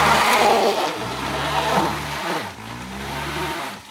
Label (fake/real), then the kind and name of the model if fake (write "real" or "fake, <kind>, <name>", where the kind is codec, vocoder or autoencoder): real